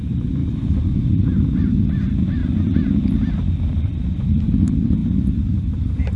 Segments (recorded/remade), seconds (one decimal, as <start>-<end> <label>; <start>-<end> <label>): 0.0-6.2 remade